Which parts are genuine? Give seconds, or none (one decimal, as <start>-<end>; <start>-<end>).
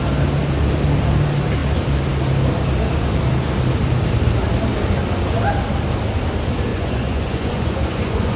0.0-6.7